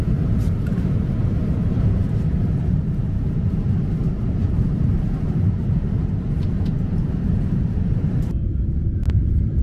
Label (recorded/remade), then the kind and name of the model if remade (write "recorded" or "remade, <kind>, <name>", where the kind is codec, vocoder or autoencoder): remade, vocoder, BigVGAN v2